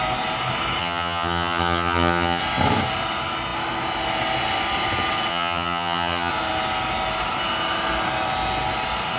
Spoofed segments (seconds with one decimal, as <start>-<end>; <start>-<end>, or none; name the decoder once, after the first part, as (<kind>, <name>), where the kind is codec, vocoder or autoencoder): 0.8-2.4 (vocoder, HiFi-GAN); 5.3-6.3